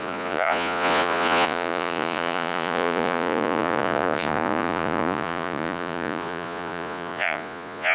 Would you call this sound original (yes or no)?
no